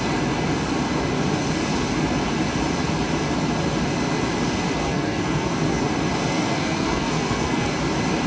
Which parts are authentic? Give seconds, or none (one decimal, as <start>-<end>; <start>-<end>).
0.0-4.8; 5.8-6.3; 7.7-8.3